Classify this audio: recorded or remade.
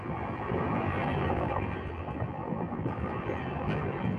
remade